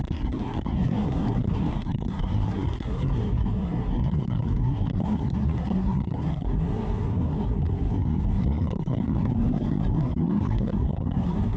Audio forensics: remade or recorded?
remade